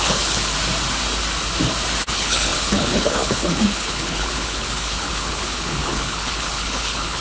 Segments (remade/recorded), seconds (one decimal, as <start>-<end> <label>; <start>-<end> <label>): 0.0-0.5 remade; 0.5-2.1 recorded; 2.1-7.2 remade